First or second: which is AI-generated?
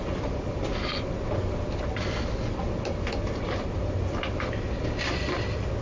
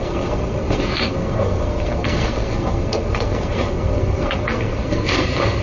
second